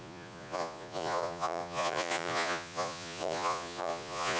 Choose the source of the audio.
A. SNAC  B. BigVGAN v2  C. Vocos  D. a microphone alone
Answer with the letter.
C